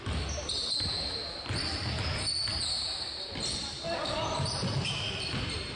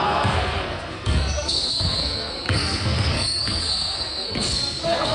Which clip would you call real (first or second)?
first